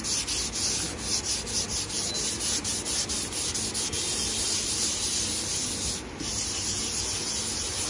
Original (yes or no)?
yes